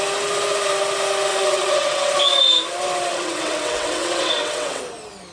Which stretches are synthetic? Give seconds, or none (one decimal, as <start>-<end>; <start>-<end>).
1.3-2.1; 3.1-4.8